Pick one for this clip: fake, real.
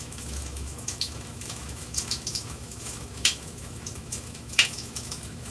fake